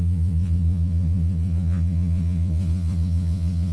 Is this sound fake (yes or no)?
yes